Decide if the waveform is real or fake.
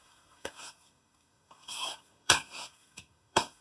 fake